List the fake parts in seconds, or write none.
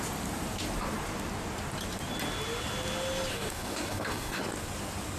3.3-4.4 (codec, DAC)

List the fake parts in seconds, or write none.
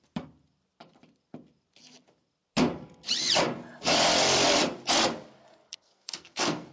5.6-6.7 (codec, SNAC)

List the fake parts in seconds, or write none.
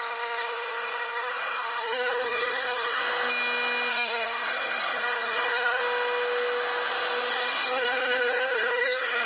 0.0-3.0 (codec, SNAC); 3.9-5.8; 7.3-9.3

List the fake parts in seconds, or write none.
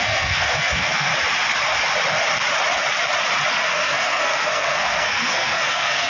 0.0-1.1 (codec, SNAC); 3.5-6.1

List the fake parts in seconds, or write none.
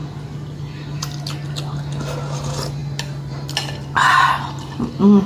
none